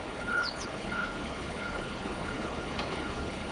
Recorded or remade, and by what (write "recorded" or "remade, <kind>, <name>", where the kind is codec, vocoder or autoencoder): remade, codec, HILCodec